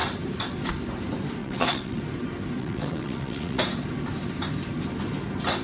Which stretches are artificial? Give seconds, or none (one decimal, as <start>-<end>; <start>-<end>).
1.4-2.0; 2.6-3.6